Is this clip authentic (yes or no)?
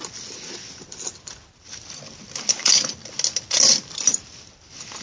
yes